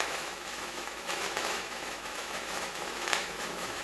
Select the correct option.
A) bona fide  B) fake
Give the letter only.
B